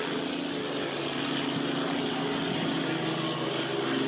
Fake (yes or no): no